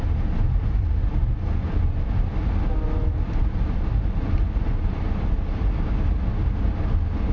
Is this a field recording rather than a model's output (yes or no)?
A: yes